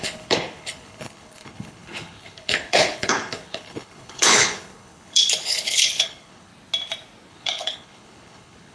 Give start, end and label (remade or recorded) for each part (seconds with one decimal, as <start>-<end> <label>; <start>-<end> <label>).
0.0-6.5 remade; 6.5-7.3 recorded; 7.3-8.7 remade